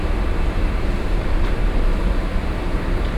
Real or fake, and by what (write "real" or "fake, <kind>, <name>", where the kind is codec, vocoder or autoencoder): fake, vocoder, BigVGAN v2